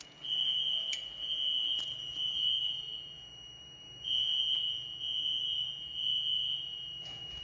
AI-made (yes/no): yes